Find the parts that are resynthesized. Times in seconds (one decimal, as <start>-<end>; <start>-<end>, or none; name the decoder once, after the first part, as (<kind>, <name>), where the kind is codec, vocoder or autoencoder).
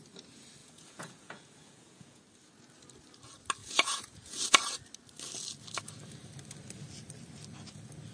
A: 0.6-2.2 (vocoder, Vocos); 3.6-4.4